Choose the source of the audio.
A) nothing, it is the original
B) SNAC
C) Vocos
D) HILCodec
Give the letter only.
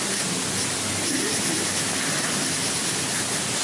A